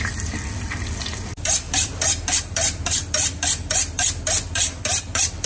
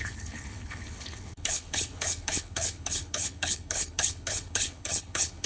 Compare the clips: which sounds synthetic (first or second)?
second